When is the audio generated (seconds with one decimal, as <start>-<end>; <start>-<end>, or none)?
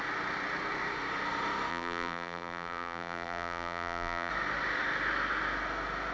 1.7-4.3